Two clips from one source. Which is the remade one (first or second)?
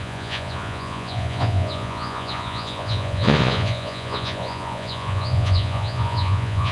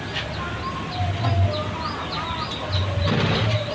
first